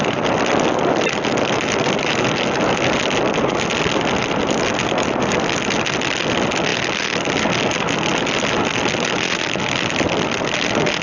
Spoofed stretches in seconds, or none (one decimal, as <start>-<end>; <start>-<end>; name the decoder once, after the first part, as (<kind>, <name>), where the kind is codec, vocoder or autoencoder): none